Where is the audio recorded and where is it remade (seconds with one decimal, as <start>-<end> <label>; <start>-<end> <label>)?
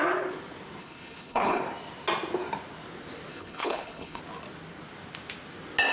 0.0-0.8 recorded; 0.8-1.6 remade; 1.6-3.3 recorded; 3.3-4.2 remade; 4.2-5.9 recorded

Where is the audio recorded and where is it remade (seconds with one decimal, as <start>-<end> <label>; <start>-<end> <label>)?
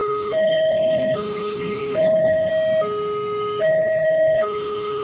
0.0-2.5 remade; 2.5-3.6 recorded; 3.6-5.0 remade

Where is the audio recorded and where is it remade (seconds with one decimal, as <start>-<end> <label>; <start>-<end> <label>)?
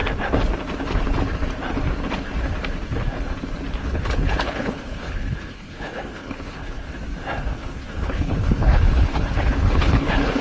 0.0-3.8 recorded; 3.8-6.9 remade; 6.9-7.4 recorded; 7.4-10.4 remade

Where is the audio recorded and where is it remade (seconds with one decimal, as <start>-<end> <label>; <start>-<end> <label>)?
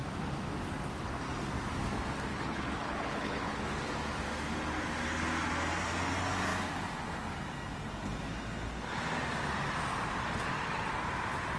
0.0-2.3 recorded; 2.3-3.6 remade; 3.6-11.6 recorded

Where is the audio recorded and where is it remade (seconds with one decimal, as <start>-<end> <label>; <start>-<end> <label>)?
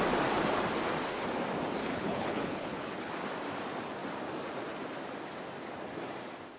0.0-1.8 recorded; 1.8-3.1 remade; 3.1-6.6 recorded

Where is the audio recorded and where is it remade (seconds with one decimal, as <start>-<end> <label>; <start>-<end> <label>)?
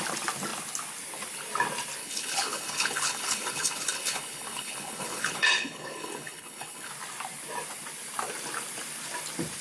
0.0-2.0 recorded; 2.0-6.9 remade; 6.9-9.6 recorded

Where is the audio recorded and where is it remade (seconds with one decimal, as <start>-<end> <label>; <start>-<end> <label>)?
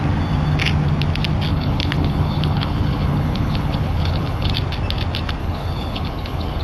0.0-1.5 recorded; 1.5-4.5 remade; 4.5-5.4 recorded; 5.4-6.6 remade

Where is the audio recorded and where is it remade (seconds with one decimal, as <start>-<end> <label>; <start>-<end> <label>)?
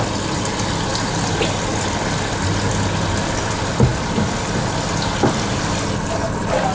0.0-6.7 recorded